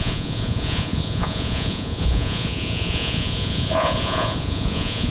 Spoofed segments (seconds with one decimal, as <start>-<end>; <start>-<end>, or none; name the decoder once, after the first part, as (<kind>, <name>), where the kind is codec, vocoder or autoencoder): 0.0-5.1 (vocoder, Vocos)